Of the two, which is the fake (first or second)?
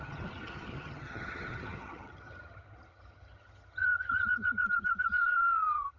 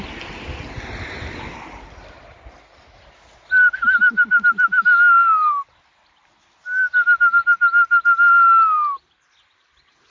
first